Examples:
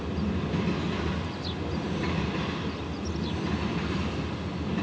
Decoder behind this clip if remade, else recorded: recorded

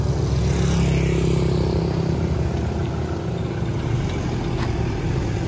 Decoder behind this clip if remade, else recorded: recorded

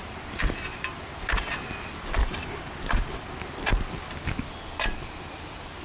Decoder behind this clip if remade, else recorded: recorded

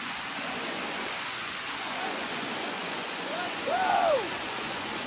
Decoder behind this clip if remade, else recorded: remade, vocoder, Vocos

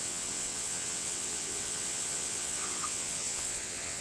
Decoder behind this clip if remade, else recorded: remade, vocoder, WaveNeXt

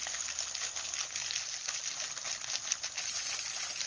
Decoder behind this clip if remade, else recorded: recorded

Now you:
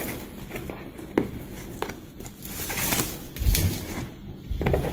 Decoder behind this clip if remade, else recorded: recorded